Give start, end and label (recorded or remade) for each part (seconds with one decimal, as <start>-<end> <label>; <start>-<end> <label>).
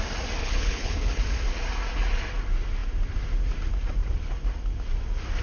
0.0-0.4 recorded; 0.4-1.2 remade; 1.2-5.4 recorded